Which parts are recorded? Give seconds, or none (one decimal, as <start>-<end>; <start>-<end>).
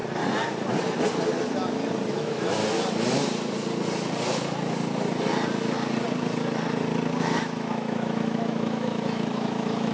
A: 0.0-2.1; 2.6-7.2